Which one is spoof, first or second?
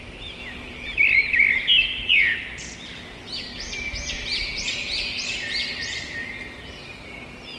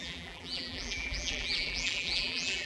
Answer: second